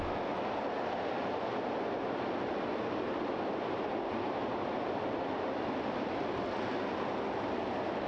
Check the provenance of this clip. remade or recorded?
recorded